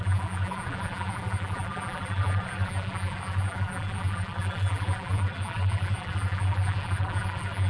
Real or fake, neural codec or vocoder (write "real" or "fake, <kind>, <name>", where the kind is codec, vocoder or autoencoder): fake, vocoder, BigVGAN v2